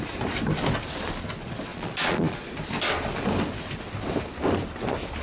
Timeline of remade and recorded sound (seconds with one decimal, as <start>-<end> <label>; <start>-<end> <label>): 0.0-1.7 recorded; 1.7-2.5 remade; 2.5-5.2 recorded